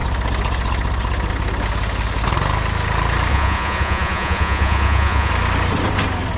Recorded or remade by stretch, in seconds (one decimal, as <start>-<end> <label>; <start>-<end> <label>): 0.0-3.3 recorded; 3.3-5.3 remade; 5.3-6.4 recorded